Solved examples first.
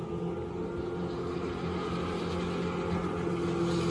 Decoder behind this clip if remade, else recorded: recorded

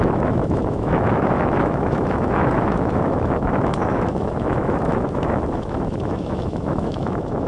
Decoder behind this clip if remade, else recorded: remade, autoencoder, DAC-VAE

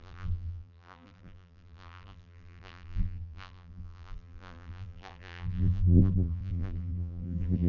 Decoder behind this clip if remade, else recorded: remade, vocoder, BigVGAN v2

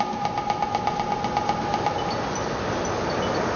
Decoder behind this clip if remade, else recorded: recorded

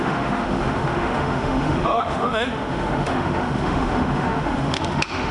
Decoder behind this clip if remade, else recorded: remade, autoencoder, DAC-VAE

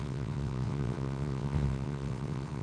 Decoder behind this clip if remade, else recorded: remade, vocoder, WaveNeXt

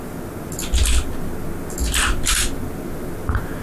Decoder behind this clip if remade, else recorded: recorded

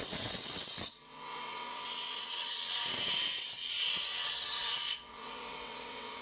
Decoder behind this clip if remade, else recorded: remade, vocoder, WaveNeXt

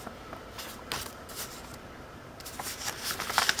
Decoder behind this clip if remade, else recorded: recorded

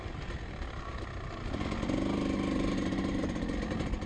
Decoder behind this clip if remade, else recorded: recorded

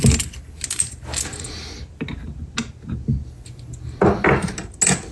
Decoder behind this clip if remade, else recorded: recorded